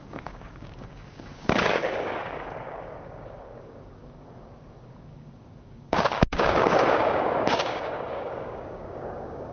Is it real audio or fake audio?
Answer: fake